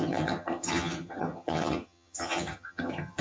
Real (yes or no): no